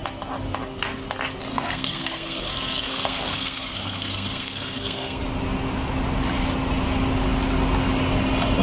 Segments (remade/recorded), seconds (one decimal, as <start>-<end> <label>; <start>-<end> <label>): 0.0-1.5 recorded; 1.5-5.2 remade; 5.2-8.6 recorded